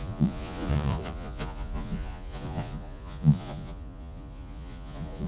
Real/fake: fake